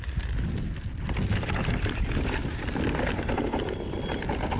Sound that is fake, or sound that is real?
real